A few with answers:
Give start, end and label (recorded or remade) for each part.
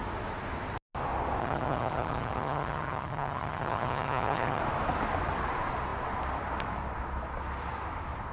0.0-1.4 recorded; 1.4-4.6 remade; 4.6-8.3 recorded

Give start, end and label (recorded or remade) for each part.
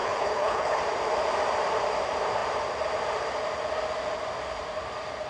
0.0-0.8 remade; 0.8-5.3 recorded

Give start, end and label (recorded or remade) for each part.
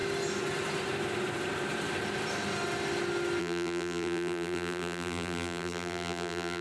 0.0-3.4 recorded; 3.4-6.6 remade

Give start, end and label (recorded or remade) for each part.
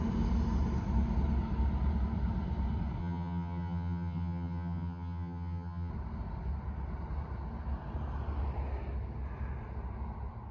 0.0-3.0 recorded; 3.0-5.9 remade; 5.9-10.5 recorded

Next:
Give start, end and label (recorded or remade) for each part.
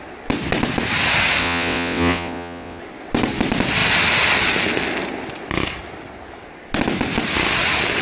0.0-1.4 recorded; 1.4-2.8 remade; 2.8-8.0 recorded